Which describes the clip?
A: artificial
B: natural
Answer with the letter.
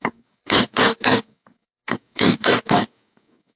A